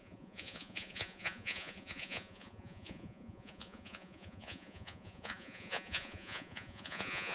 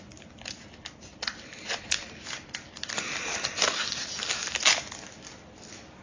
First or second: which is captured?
second